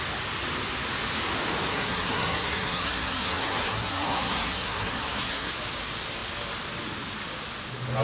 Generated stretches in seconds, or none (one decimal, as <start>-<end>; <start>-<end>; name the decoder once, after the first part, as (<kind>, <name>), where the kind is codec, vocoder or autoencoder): 1.7-5.5 (codec, SNAC)